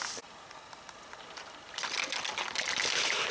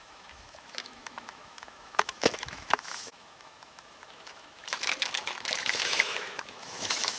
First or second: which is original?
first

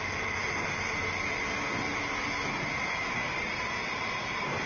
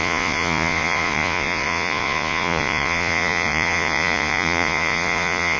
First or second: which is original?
first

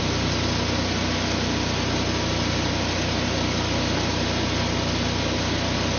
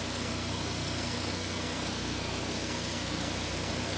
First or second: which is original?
first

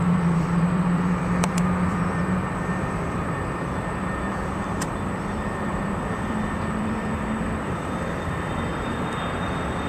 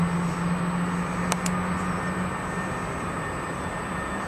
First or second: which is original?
second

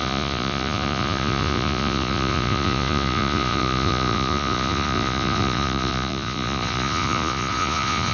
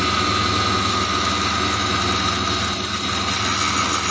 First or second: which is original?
second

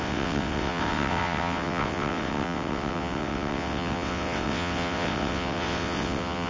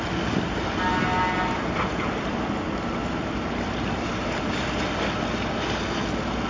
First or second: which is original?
second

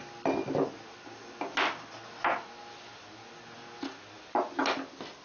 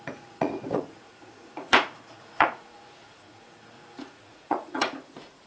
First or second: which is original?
first